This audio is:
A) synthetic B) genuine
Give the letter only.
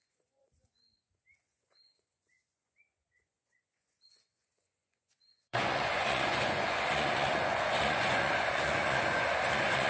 A